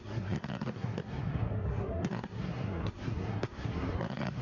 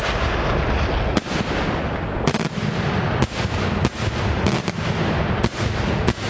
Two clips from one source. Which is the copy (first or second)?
first